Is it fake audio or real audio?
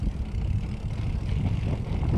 real